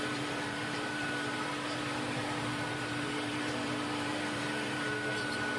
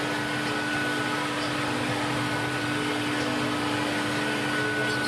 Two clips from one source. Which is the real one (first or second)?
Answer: second